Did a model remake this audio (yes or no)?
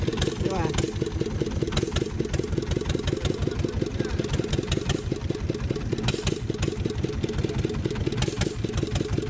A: no